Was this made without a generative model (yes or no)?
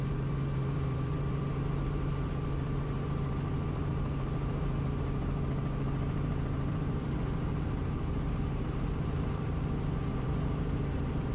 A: no